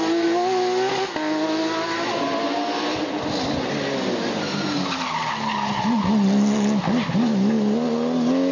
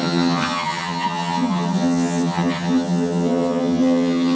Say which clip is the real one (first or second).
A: first